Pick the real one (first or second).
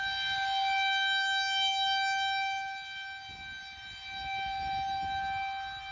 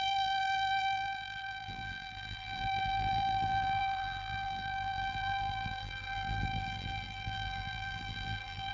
first